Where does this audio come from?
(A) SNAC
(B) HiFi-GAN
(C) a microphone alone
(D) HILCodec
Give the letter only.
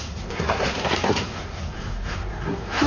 A